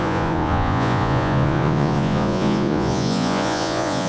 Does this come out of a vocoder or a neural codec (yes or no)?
yes